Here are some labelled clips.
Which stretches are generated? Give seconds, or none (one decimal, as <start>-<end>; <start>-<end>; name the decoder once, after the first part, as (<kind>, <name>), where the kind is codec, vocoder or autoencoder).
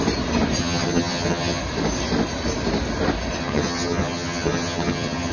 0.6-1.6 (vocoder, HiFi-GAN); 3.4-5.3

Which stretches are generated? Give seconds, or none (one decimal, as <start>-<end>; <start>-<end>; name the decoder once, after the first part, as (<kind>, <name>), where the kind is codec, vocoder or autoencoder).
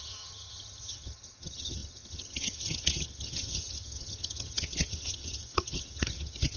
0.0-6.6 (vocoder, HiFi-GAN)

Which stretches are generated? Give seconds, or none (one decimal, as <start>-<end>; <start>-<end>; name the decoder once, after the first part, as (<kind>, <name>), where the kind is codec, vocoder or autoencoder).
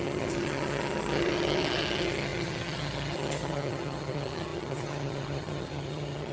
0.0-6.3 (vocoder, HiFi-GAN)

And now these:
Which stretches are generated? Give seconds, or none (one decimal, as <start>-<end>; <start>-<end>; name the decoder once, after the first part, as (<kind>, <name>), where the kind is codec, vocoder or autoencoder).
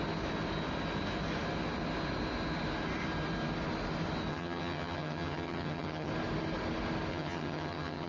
4.3-6.1 (vocoder, HiFi-GAN); 7.1-8.1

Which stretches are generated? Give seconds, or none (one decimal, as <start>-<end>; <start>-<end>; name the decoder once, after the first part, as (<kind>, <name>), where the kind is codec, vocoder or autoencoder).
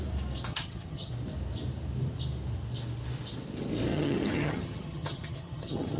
0.5-1.1 (vocoder, HiFi-GAN); 3.9-6.0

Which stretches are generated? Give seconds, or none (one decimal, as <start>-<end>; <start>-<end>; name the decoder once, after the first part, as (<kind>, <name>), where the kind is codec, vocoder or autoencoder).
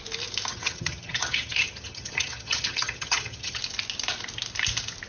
0.5-3.6 (vocoder, HiFi-GAN)